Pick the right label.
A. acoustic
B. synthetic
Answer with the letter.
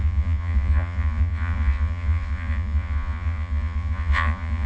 B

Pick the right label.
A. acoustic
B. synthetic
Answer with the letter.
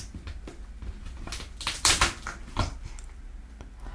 A